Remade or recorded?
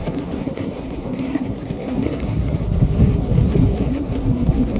remade